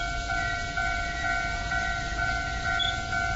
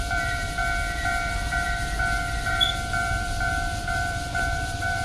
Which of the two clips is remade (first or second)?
second